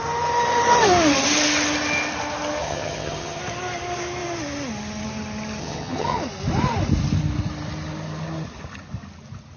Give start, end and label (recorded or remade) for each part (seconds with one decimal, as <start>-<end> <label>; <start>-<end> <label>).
0.0-2.6 recorded; 2.6-3.4 remade; 3.4-5.6 recorded; 5.6-6.2 remade; 6.2-9.6 recorded

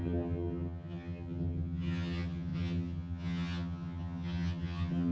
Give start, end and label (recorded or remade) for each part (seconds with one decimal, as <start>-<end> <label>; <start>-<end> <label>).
0.0-5.1 remade

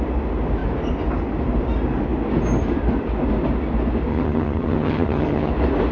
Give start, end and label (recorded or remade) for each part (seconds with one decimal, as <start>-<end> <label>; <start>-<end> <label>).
0.0-4.1 recorded; 4.1-5.5 remade; 5.5-5.9 recorded

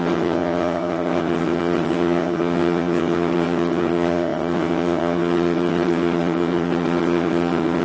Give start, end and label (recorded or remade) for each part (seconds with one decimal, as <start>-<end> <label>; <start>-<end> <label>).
0.0-7.8 remade

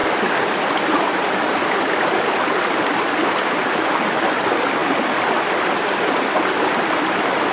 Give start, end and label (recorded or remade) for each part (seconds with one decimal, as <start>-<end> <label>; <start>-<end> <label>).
0.0-7.5 recorded